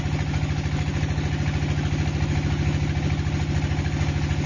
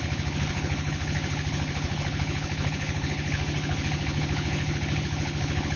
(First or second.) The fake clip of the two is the second